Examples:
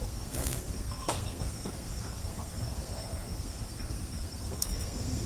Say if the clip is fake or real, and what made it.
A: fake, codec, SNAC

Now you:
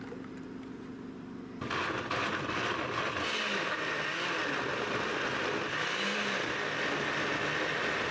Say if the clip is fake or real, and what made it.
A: real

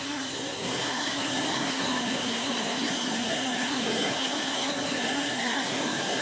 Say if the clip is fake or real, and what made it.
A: fake, codec, SNAC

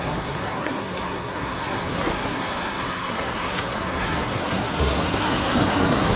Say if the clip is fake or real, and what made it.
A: fake, codec, SNAC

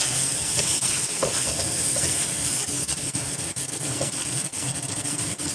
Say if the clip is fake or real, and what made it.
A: fake, codec, SNAC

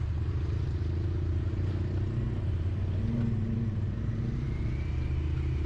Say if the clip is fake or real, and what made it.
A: real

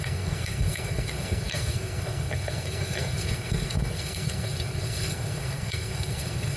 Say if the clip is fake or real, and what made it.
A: fake, codec, SNAC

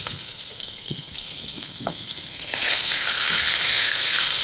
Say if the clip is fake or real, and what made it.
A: fake, codec, SNAC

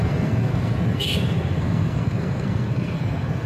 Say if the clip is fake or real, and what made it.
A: fake, codec, SNAC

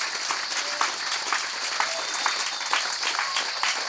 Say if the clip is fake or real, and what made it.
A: real